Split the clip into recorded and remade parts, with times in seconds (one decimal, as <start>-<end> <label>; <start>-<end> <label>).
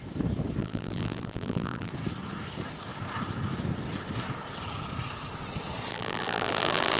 0.0-0.6 recorded; 0.6-1.9 remade; 1.9-5.9 recorded; 5.9-7.0 remade